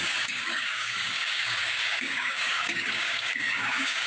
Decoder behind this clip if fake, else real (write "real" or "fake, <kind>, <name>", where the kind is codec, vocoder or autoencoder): fake, codec, DAC